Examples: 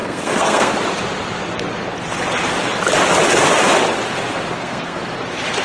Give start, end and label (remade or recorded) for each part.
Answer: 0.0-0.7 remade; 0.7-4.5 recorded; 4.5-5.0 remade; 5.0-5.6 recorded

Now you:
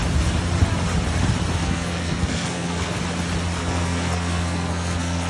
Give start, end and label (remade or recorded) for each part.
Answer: 0.0-1.6 recorded; 1.6-3.0 remade; 3.0-3.6 recorded; 3.6-5.3 remade

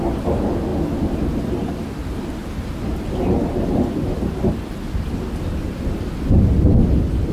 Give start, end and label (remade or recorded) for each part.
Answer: 0.0-7.3 recorded

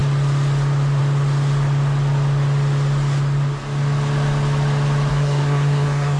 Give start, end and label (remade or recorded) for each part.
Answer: 0.0-5.1 recorded; 5.1-6.2 remade

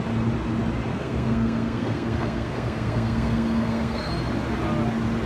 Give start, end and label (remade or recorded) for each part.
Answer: 0.0-0.9 recorded; 0.9-4.1 remade; 4.1-5.3 recorded

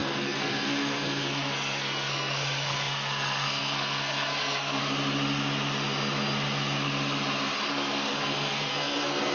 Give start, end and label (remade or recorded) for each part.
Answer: 0.0-4.8 remade; 4.8-7.7 recorded; 7.7-9.3 remade